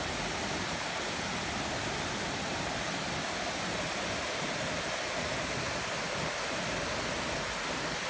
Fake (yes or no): no